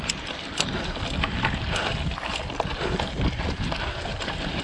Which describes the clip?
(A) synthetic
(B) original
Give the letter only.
B